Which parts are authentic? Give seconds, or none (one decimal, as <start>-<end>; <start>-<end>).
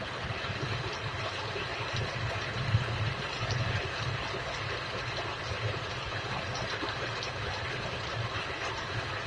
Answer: 1.7-5.5